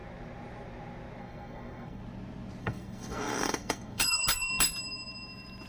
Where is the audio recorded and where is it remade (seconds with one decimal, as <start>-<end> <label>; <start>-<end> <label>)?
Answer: 0.0-1.2 recorded; 1.2-2.0 remade; 2.0-2.6 recorded; 2.6-4.5 remade; 4.5-5.7 recorded

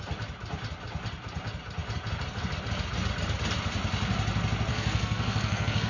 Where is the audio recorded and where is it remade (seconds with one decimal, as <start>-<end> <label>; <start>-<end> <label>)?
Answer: 0.0-4.7 recorded; 4.7-5.9 remade

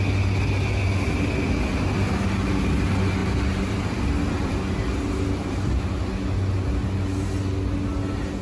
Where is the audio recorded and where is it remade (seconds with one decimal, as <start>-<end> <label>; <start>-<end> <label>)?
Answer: 0.0-8.4 recorded